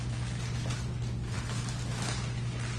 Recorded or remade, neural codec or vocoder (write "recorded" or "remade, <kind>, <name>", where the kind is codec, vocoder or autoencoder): recorded